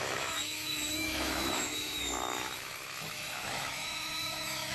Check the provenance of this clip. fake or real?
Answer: fake